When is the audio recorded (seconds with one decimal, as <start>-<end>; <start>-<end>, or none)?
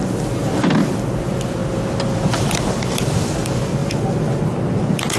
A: none